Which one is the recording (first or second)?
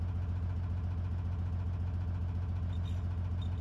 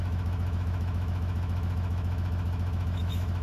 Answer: first